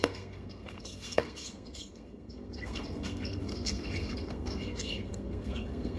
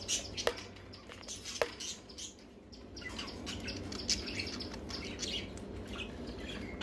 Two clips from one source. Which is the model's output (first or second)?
first